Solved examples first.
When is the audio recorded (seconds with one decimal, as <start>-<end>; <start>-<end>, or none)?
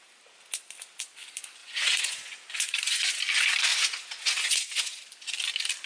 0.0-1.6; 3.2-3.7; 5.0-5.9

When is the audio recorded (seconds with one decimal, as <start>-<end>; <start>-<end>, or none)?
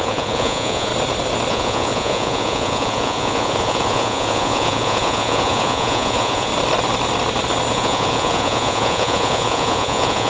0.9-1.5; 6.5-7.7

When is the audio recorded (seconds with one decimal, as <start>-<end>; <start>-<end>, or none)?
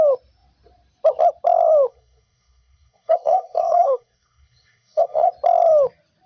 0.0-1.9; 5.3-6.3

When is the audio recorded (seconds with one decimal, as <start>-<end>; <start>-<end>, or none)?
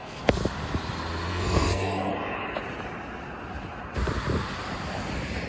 0.4-1.3; 2.1-5.5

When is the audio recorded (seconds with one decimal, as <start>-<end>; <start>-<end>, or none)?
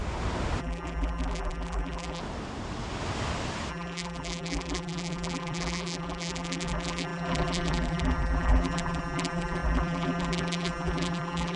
0.0-0.6; 2.2-3.7